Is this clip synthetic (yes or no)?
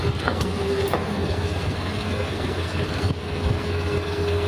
yes